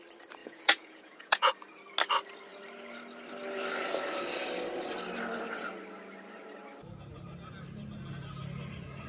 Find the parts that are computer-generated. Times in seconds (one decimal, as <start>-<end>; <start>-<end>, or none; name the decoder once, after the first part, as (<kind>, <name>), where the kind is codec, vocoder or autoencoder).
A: 0.4-1.5 (vocoder, Vocos)